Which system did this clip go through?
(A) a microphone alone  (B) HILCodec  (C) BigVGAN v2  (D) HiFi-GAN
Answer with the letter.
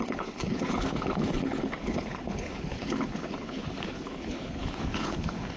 B